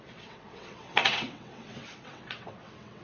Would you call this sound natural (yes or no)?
no